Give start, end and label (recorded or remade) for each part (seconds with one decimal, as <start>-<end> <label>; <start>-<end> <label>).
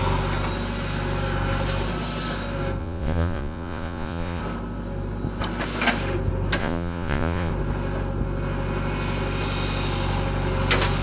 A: 0.0-2.8 recorded; 2.8-4.4 remade; 4.4-6.6 recorded; 6.6-7.5 remade; 7.5-11.0 recorded